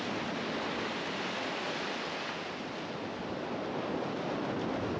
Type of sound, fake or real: real